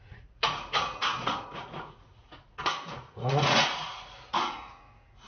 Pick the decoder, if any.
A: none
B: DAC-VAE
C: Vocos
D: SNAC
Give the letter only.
C